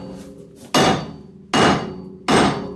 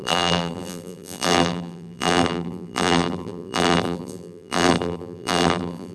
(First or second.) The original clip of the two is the first